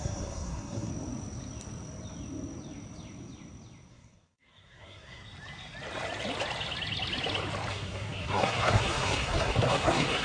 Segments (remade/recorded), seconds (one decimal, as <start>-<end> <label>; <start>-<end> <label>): 0.0-0.9 remade; 0.9-3.9 recorded; 3.9-5.2 remade; 5.2-7.7 recorded; 7.7-10.2 remade